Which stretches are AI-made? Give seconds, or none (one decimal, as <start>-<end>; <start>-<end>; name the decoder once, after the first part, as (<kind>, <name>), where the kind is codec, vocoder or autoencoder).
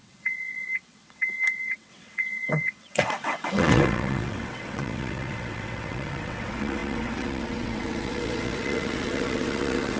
0.0-10.0 (vocoder, WaveNeXt)